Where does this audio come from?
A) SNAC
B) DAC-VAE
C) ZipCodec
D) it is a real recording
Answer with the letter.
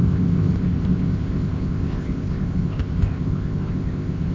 C